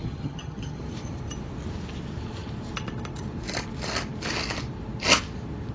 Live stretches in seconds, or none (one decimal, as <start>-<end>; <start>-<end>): 0.8-5.7